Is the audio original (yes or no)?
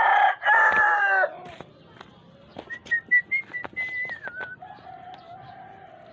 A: yes